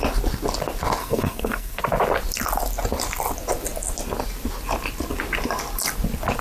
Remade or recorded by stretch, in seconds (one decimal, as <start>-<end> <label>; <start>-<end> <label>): 0.0-1.0 recorded; 1.0-1.8 remade; 1.8-6.4 recorded

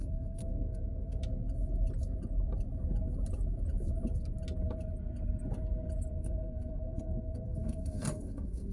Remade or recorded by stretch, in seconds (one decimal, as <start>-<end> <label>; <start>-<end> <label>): 0.0-1.2 remade; 1.2-6.1 recorded; 6.1-8.7 remade

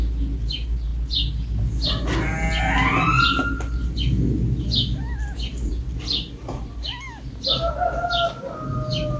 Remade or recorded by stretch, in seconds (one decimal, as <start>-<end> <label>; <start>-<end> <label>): 0.0-9.2 recorded

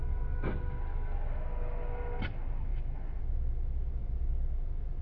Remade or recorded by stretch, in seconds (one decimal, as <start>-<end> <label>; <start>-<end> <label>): 0.0-5.0 recorded

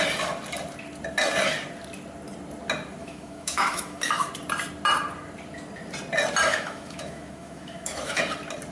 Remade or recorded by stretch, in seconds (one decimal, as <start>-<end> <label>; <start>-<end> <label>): 0.0-3.0 recorded; 3.0-4.3 remade; 4.3-6.5 recorded; 6.5-8.2 remade; 8.2-8.7 recorded

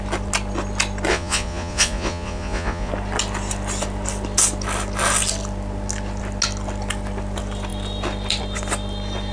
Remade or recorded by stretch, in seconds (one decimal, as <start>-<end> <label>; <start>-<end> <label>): 0.0-1.1 recorded; 1.1-2.9 remade; 2.9-9.3 recorded

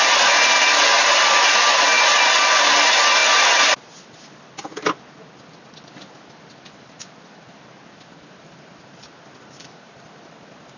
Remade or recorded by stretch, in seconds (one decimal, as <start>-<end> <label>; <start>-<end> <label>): 0.0-10.8 recorded

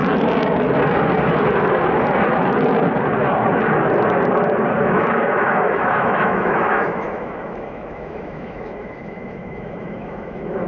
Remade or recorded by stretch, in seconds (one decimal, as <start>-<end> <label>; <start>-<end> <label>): 0.0-4.8 recorded; 4.8-10.7 remade